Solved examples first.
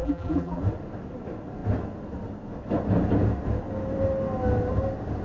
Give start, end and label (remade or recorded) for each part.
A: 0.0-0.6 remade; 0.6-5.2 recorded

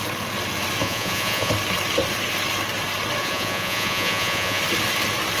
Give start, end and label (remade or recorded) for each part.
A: 0.0-0.8 recorded; 0.8-1.5 remade; 1.5-3.2 recorded; 3.2-4.6 remade; 4.6-5.4 recorded

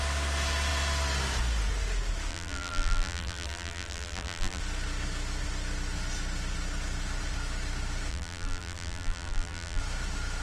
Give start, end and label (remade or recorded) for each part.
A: 0.0-2.3 recorded; 2.3-4.6 remade; 4.6-8.1 recorded; 8.1-9.8 remade; 9.8-10.4 recorded